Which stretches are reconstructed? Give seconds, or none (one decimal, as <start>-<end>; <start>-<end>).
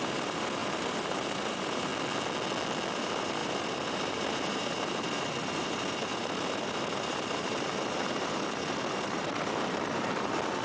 0.0-1.9; 2.9-10.6